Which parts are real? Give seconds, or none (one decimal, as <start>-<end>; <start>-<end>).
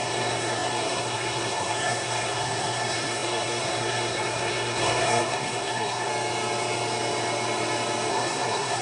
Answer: 6.1-8.1